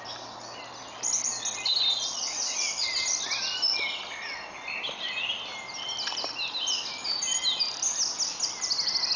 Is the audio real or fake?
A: real